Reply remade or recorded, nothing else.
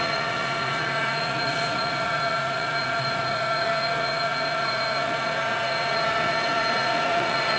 remade